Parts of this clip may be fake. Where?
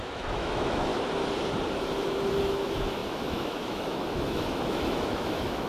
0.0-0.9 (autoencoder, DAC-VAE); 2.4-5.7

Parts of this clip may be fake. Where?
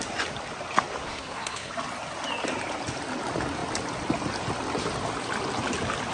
1.0-1.7 (codec, SNAC)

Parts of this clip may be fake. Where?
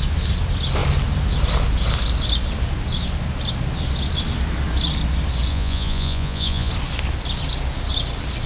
5.5-6.7 (vocoder, Vocos)